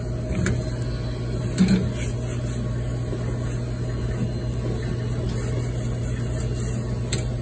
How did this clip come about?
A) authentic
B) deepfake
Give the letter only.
A